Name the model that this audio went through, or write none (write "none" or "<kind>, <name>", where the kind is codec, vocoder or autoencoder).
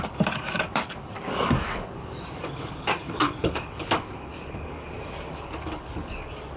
codec, DAC